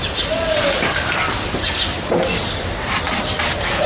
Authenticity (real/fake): real